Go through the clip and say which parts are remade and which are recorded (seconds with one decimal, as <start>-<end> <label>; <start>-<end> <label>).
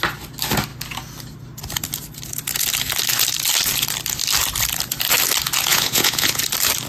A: 0.0-5.7 recorded; 5.7-6.4 remade; 6.4-6.9 recorded